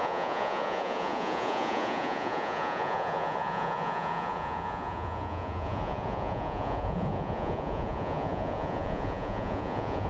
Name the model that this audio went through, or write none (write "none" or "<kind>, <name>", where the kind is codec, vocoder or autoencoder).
vocoder, Vocos